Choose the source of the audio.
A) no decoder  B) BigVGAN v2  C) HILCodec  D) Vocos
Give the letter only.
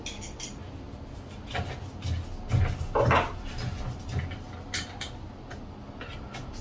A